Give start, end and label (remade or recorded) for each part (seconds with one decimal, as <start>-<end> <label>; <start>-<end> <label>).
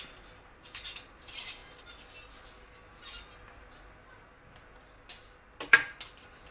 0.0-6.5 recorded